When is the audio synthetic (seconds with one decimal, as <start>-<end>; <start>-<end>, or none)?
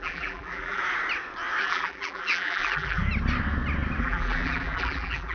0.0-0.8; 1.6-3.0; 4.0-5.3